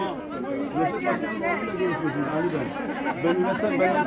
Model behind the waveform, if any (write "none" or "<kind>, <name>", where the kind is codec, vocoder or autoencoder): none